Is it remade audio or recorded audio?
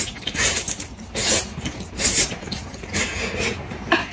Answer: recorded